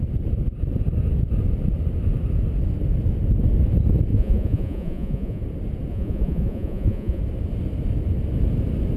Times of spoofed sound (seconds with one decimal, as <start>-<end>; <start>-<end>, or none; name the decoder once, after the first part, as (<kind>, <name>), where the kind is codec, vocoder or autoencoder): 4.1-5.4 (vocoder, Vocos); 5.9-7.2